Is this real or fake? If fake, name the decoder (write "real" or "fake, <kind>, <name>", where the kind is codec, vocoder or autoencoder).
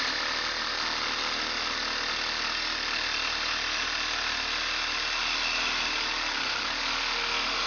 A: real